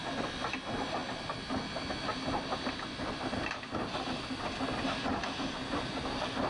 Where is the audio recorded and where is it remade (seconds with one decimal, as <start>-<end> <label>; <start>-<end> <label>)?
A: 0.0-6.5 recorded